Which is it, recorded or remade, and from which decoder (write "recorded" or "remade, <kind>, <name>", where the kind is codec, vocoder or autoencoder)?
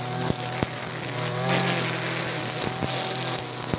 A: recorded